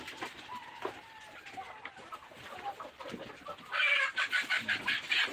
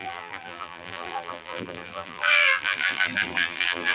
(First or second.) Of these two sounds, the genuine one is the first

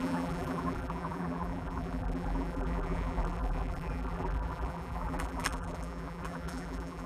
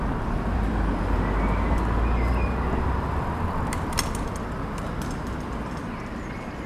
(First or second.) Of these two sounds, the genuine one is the second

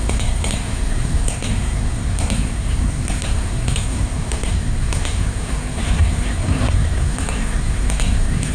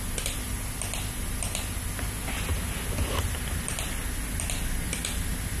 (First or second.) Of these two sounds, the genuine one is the second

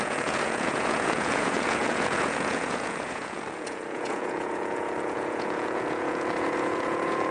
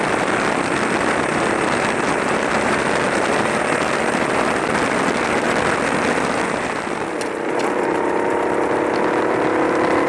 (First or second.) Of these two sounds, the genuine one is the second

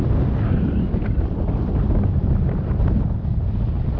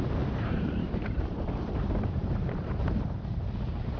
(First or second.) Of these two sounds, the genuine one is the first